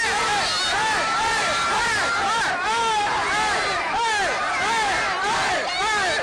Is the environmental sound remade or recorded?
recorded